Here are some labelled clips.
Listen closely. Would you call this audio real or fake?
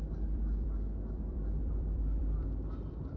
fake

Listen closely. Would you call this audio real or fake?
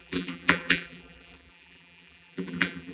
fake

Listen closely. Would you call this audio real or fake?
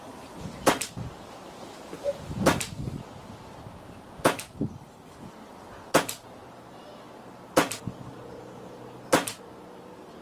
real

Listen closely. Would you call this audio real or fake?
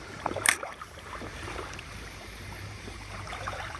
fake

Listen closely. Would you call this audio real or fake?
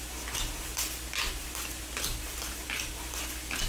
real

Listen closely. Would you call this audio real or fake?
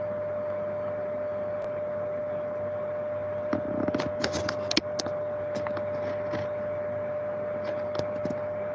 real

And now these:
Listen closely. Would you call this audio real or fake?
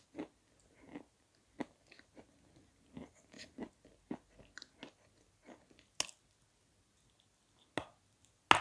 real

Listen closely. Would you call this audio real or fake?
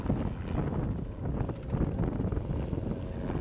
real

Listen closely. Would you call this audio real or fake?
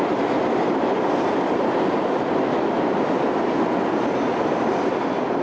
real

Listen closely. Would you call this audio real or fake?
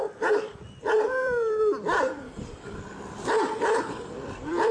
fake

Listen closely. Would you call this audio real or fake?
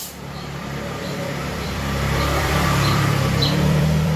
fake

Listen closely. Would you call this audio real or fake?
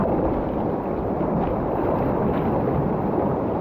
real